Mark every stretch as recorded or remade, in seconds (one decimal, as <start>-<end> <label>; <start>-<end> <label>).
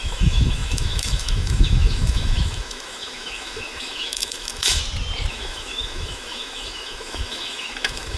0.0-4.8 remade; 4.8-5.3 recorded; 5.3-8.2 remade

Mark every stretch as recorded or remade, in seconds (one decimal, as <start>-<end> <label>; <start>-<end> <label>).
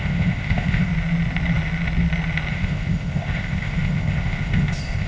0.0-0.9 remade; 0.9-2.5 recorded; 2.5-5.1 remade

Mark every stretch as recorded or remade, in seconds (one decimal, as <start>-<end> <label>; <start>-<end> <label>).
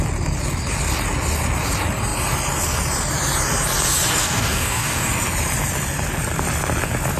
0.0-4.2 recorded; 4.2-5.1 remade; 5.1-7.2 recorded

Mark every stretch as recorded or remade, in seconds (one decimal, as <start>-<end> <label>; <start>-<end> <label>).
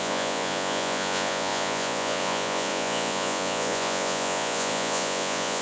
0.0-5.6 remade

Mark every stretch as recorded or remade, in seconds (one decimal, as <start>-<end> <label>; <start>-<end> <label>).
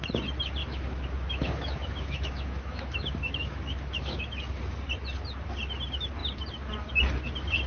0.0-0.6 recorded; 0.6-4.6 remade; 4.6-7.7 recorded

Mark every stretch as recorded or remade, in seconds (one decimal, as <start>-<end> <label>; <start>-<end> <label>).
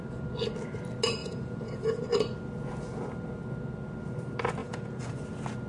0.0-1.2 recorded; 1.2-2.0 remade; 2.0-4.6 recorded; 4.6-5.2 remade; 5.2-5.7 recorded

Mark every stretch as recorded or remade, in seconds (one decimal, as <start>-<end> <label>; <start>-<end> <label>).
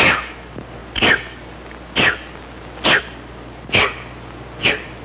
0.0-5.0 recorded